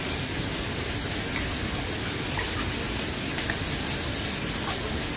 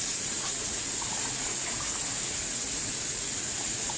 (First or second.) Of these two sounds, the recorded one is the first